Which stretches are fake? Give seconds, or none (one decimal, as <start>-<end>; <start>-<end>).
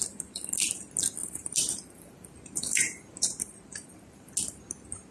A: 1.2-4.3